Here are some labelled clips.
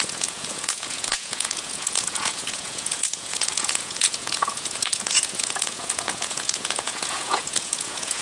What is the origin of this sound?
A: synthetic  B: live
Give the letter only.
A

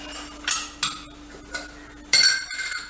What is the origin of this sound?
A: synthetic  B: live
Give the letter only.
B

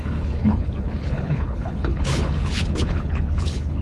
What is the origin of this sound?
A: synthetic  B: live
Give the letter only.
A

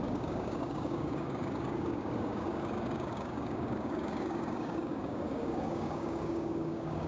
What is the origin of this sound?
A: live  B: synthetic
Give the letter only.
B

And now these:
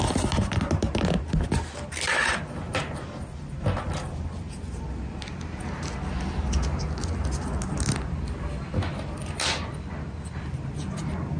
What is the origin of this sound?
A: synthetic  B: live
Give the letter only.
B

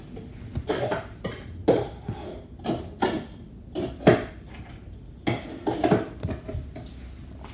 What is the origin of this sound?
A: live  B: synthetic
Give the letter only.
A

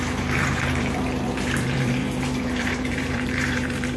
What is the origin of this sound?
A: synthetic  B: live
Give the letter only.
A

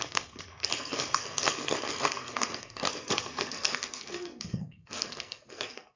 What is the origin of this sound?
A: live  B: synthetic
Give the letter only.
B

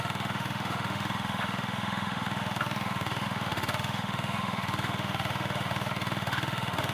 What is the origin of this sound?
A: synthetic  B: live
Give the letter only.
A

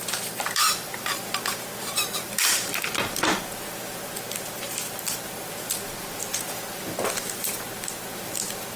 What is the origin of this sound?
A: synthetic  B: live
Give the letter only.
B